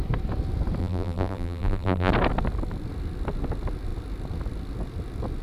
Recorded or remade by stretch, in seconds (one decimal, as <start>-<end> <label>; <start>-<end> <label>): 0.0-0.8 recorded; 0.8-2.1 remade; 2.1-5.4 recorded